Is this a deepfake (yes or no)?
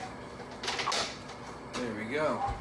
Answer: no